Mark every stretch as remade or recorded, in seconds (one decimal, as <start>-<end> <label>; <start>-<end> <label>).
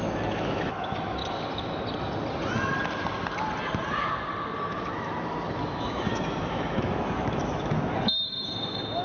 0.0-1.2 remade; 1.2-4.7 recorded; 4.7-9.0 remade